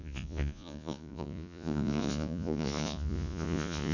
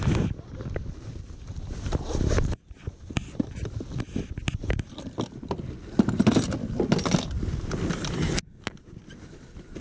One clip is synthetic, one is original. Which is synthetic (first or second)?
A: first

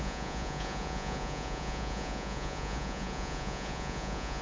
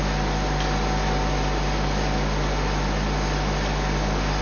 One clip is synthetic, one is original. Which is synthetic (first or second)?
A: first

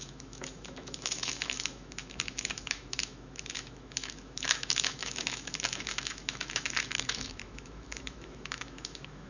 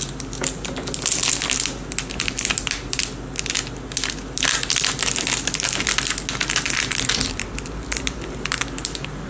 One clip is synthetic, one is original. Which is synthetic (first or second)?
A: first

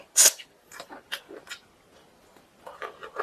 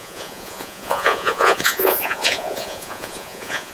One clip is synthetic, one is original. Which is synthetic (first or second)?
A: second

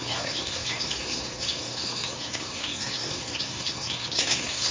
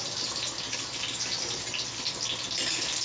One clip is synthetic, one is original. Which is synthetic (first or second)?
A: first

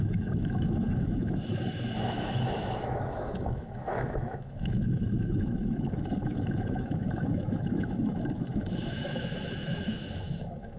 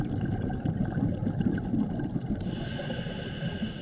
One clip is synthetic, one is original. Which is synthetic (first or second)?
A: first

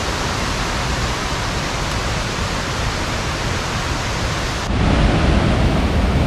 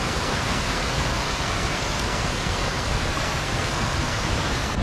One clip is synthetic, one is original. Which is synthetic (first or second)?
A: second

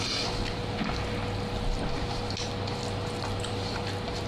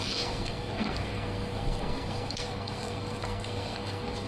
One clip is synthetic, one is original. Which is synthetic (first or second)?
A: second